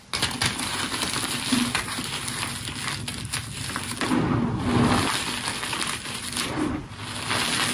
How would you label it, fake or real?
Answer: real